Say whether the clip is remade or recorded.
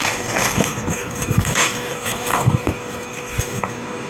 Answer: remade